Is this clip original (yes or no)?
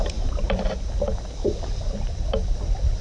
yes